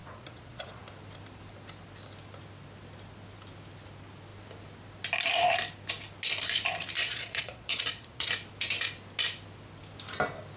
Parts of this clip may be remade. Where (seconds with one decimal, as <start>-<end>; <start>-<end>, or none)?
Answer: 0.0-0.8; 7.0-8.3